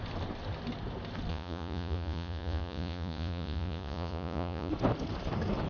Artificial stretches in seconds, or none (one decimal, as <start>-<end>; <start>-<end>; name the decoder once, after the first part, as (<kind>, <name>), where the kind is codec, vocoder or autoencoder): 1.3-4.7 (vocoder, Vocos)